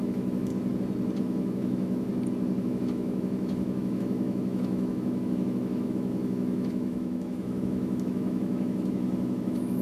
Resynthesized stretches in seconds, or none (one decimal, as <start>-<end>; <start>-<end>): 0.0-0.5; 1.2-2.1; 2.6-9.8